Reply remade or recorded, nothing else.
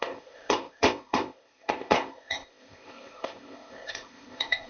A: remade